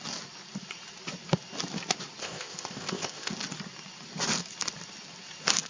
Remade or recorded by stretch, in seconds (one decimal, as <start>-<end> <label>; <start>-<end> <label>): 0.0-2.2 recorded; 2.2-3.3 remade; 3.3-5.7 recorded